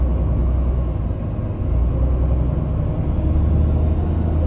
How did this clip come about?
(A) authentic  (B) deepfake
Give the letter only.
A